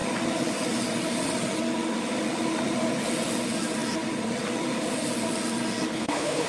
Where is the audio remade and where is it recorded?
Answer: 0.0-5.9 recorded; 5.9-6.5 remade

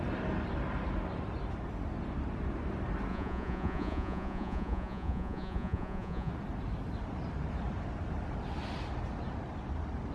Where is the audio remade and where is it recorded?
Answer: 0.0-3.1 recorded; 3.1-6.3 remade; 6.3-10.1 recorded

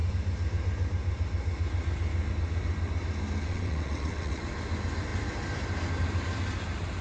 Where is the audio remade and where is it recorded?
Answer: 0.0-3.4 recorded; 3.4-4.4 remade; 4.4-7.0 recorded

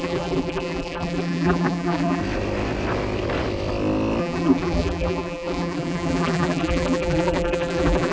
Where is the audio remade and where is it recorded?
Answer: 0.0-2.2 remade; 2.2-4.2 recorded; 4.2-8.1 remade

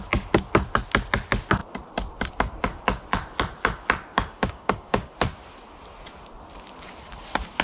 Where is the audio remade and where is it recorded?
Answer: 0.0-4.1 recorded; 4.1-5.1 remade; 5.1-7.6 recorded

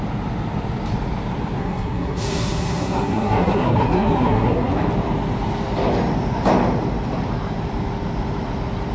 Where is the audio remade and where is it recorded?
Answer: 0.0-1.6 recorded; 1.6-4.7 remade; 4.7-8.9 recorded